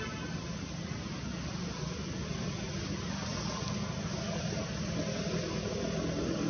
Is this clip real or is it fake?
real